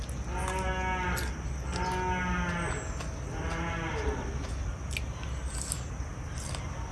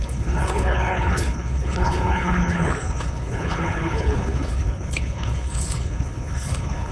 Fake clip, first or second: second